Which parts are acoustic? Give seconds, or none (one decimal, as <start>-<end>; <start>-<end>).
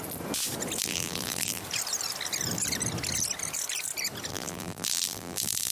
0.0-0.8; 1.6-4.3